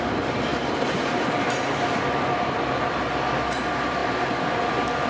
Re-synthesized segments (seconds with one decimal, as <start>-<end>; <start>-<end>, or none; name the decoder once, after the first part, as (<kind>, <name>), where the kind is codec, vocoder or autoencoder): none